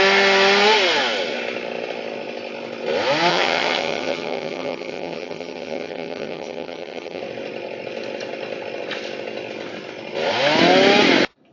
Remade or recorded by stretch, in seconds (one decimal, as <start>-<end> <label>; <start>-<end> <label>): 0.0-3.3 recorded; 3.3-7.2 remade; 7.2-11.5 recorded